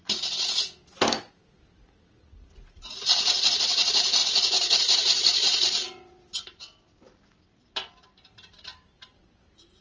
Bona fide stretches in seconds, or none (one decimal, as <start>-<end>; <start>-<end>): 0.0-9.8